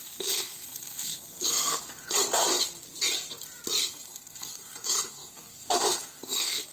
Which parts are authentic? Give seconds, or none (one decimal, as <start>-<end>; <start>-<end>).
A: 2.5-3.8